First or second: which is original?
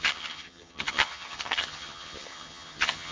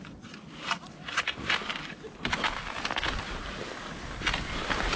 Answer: second